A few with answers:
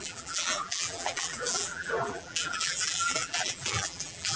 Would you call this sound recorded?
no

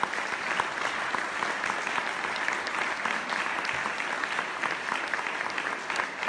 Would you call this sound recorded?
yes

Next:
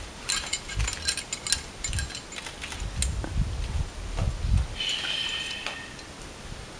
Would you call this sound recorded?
yes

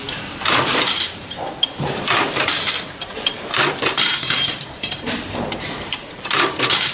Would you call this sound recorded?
no